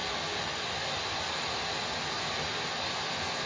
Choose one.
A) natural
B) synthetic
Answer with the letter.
A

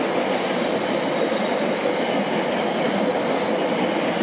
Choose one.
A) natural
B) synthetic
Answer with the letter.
A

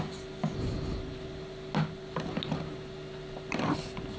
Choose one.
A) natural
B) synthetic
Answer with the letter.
A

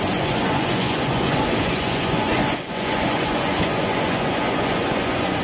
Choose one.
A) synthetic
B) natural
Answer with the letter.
A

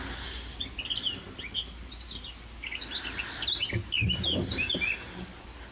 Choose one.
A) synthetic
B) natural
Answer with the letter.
B